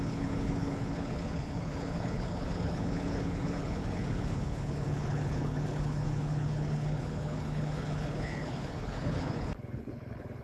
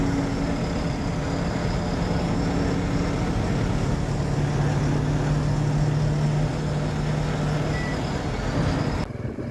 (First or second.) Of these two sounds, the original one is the second